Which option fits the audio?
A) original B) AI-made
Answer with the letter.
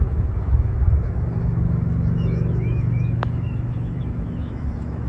B